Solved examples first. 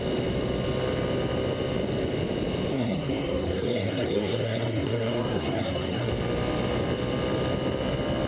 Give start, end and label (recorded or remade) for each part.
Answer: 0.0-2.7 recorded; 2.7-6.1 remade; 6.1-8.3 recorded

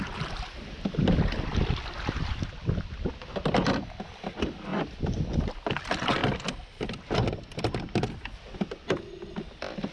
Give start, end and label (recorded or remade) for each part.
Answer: 0.0-6.2 remade; 6.2-9.5 recorded; 9.5-9.9 remade

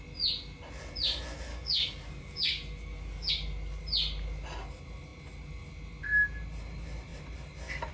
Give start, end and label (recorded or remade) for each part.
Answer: 0.0-1.5 recorded; 1.5-3.3 remade; 3.3-7.9 recorded

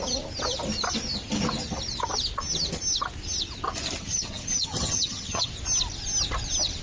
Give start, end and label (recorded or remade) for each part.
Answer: 0.0-4.0 recorded; 4.0-5.5 remade; 5.5-6.8 recorded

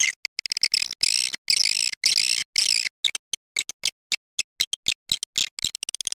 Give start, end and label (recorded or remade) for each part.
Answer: 0.0-6.2 recorded

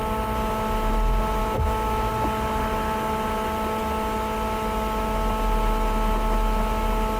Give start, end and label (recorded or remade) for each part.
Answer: 0.0-1.4 recorded; 1.4-2.1 remade; 2.1-7.2 recorded